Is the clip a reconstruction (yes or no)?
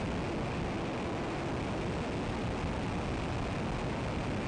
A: no